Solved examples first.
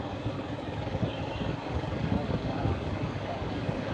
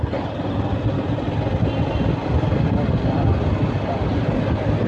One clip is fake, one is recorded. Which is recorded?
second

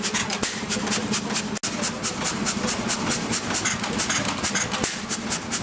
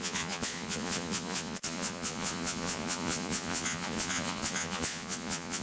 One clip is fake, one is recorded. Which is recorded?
first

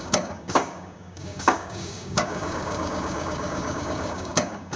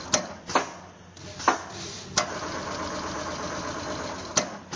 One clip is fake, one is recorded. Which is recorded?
second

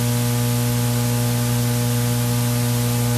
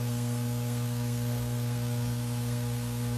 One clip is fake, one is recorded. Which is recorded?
first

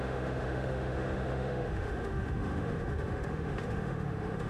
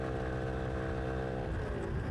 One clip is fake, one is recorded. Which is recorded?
second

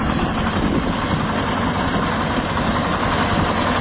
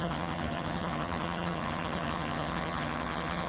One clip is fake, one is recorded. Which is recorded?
first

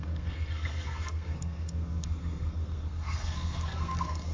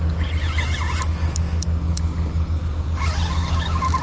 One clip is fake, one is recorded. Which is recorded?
second